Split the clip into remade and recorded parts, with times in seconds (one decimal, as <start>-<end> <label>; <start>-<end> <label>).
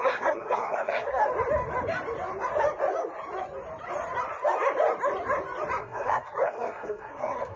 0.0-1.2 remade; 1.2-5.8 recorded; 5.8-7.6 remade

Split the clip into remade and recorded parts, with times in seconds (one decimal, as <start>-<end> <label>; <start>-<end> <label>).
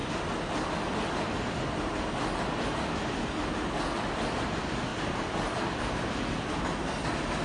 0.0-7.4 recorded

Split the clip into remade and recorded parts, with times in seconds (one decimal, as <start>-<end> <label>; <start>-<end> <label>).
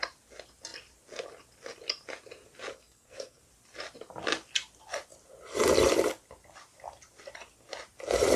0.0-2.7 recorded; 2.7-3.4 remade; 3.4-8.4 recorded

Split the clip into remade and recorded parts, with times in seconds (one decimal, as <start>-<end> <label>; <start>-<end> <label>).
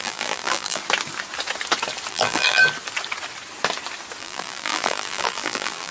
0.0-0.8 remade; 0.8-2.1 recorded; 2.1-2.6 remade; 2.6-4.2 recorded; 4.2-5.9 remade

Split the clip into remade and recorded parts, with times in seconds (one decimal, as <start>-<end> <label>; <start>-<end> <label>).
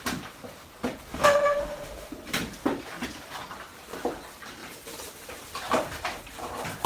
0.0-1.1 recorded; 1.1-2.1 remade; 2.1-6.9 recorded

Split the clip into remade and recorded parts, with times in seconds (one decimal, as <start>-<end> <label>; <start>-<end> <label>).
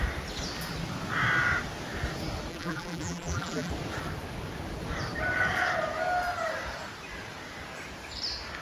0.0-2.5 recorded; 2.5-3.7 remade; 3.7-8.6 recorded